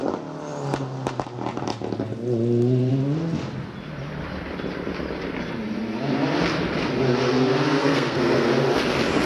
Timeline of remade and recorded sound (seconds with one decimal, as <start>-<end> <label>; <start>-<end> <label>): 0.0-7.8 recorded; 7.8-8.5 remade; 8.5-9.3 recorded